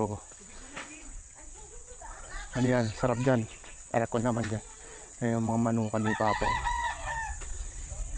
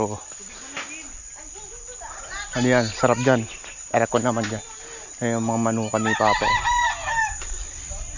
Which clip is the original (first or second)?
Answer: second